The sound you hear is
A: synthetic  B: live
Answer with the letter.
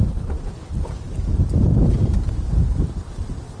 A